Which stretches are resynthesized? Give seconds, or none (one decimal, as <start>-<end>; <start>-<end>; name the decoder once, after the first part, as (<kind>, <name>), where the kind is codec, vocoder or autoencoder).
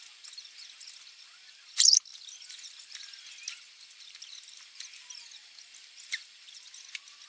1.1-5.7 (vocoder, BigVGAN v2); 6.4-7.3